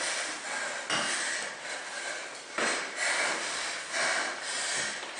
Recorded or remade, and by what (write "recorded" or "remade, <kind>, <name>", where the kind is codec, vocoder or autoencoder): remade, vocoder, BigVGAN v2